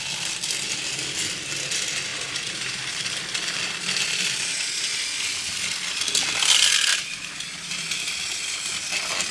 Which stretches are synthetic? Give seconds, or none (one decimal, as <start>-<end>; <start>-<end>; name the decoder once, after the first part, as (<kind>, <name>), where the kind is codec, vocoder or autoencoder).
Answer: 2.1-3.1 (vocoder, BigVGAN v2); 6.9-7.7

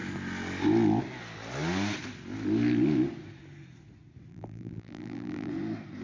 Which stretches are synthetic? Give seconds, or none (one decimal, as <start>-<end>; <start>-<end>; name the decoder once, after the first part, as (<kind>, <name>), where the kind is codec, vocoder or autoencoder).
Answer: 4.3-5.5 (vocoder, BigVGAN v2)

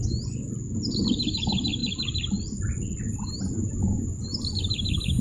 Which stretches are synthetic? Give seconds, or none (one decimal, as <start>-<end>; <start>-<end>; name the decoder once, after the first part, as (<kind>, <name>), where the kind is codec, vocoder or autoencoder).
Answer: none